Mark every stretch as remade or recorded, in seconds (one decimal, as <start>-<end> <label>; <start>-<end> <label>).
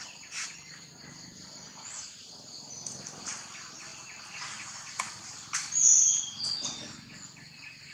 0.0-7.9 recorded